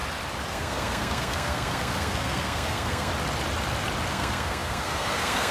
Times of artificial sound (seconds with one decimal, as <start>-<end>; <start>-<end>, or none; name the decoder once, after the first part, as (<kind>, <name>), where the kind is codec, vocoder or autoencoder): 0.5-3.1 (codec, SNAC); 4.1-5.5